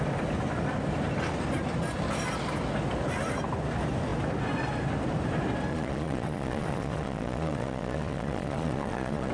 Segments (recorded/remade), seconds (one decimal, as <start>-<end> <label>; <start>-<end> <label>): 0.0-5.7 recorded; 5.7-9.3 remade